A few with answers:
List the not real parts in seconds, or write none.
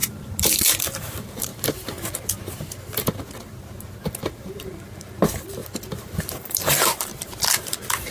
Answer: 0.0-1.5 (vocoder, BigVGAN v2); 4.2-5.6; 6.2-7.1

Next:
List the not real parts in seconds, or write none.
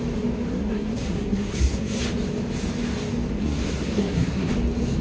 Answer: 0.5-2.0 (codec, SNAC); 3.4-4.5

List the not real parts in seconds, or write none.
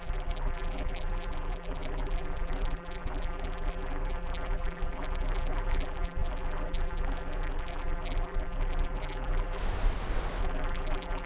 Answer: 0.0-9.6 (vocoder, BigVGAN v2); 10.4-11.3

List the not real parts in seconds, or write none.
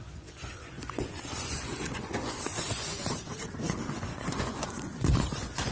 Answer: 0.0-5.7 (vocoder, Vocos)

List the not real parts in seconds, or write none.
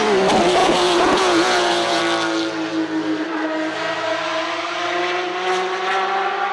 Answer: 0.6-2.0 (vocoder, Vocos)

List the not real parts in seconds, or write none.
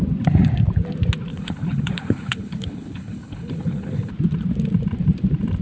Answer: 1.3-4.1 (codec, HILCodec)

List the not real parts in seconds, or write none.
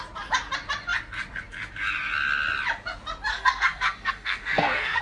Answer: 3.3-5.0 (codec, SNAC)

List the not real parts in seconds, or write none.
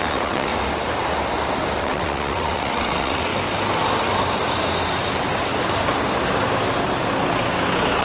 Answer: 0.0-0.5 (vocoder, WaveNeXt); 1.8-3.3